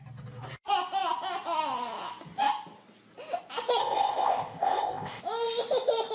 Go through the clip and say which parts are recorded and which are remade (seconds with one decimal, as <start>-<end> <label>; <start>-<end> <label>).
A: 0.0-3.8 recorded; 3.8-5.2 remade; 5.2-6.1 recorded